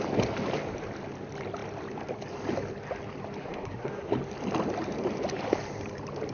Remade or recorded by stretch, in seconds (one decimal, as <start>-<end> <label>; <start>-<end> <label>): 0.0-3.4 recorded; 3.4-4.1 remade; 4.1-6.3 recorded